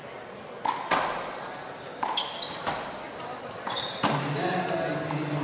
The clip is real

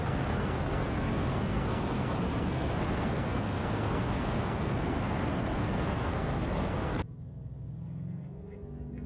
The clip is fake